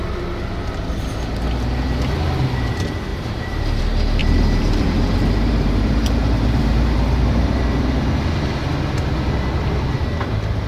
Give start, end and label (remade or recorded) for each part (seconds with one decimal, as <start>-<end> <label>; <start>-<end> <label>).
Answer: 0.0-3.1 recorded; 3.1-3.8 remade; 3.8-4.2 recorded; 4.2-8.1 remade; 8.1-10.7 recorded